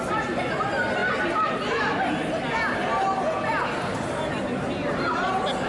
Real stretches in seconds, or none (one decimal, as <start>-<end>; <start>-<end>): 0.0-5.7